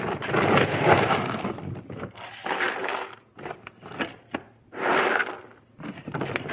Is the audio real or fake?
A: real